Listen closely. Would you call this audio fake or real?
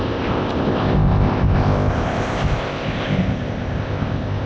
fake